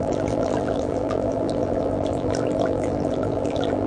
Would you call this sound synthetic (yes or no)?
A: yes